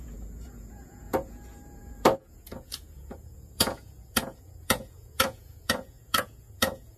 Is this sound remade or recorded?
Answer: remade